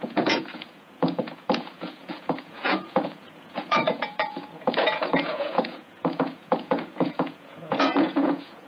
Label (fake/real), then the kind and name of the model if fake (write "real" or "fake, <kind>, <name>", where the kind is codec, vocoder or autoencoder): fake, vocoder, Vocos